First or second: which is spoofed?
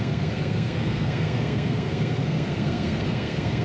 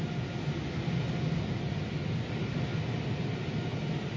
first